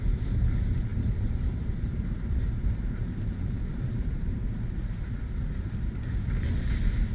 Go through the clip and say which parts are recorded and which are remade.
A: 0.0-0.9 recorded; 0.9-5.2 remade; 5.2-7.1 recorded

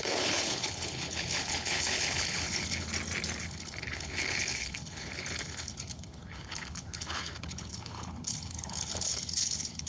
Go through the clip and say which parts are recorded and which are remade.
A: 0.0-2.9 remade; 2.9-3.4 recorded; 3.4-9.9 remade